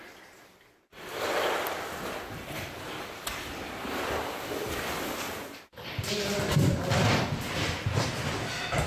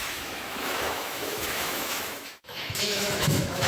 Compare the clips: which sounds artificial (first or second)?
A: second